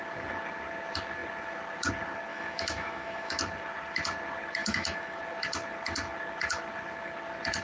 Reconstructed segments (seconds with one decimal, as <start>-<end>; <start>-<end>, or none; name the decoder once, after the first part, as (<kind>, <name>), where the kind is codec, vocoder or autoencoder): 2.3-3.4 (autoencoder, DAC-VAE); 4.6-5.2